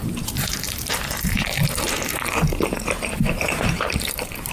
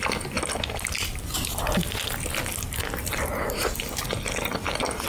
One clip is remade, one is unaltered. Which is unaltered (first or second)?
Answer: second